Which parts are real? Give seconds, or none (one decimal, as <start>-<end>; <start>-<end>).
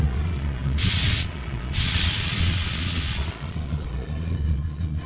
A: none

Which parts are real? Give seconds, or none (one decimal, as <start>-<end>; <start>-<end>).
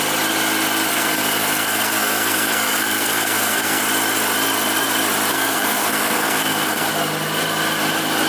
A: 0.0-0.9; 3.8-5.3; 6.9-8.3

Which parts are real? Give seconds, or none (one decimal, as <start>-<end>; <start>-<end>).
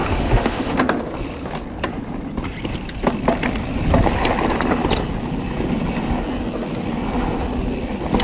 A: 0.8-8.2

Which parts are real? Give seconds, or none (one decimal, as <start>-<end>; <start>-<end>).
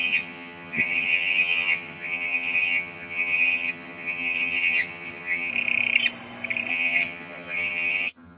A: 5.5-6.7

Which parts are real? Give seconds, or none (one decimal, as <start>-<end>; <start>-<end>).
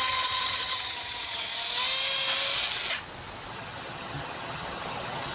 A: 1.5-3.5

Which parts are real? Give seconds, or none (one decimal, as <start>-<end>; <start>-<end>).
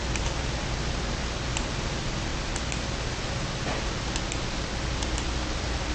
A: 0.0-5.9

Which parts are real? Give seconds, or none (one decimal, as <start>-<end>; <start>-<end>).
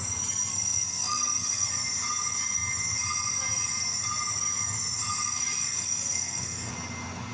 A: 0.0-0.5; 1.7-5.6; 6.7-7.3